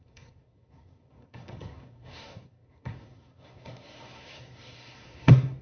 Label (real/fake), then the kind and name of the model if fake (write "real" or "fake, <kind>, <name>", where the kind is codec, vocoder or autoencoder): fake, codec, SNAC